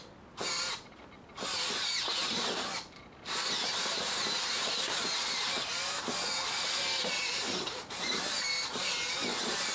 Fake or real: real